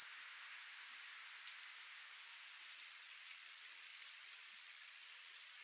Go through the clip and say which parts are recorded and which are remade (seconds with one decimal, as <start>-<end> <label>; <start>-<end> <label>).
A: 0.0-2.7 recorded; 2.7-5.6 remade